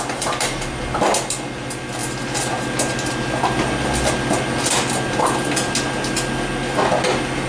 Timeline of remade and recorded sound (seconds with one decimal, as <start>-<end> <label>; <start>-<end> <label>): 0.0-7.5 recorded